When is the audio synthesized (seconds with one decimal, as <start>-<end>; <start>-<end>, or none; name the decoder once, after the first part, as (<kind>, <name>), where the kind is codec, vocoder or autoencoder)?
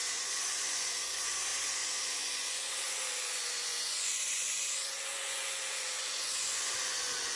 0.0-7.4 (vocoder, Vocos)